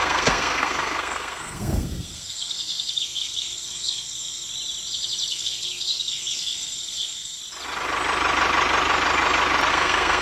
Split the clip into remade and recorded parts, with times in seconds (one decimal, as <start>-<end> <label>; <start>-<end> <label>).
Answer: 0.0-4.5 remade; 4.5-5.3 recorded; 5.3-7.4 remade; 7.4-9.7 recorded; 9.7-10.2 remade